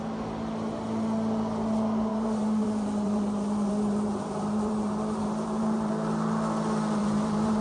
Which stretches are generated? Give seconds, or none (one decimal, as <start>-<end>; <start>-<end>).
2.1-5.9; 7.0-7.6